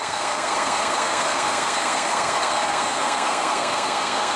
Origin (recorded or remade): remade